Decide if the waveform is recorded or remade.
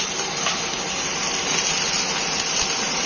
recorded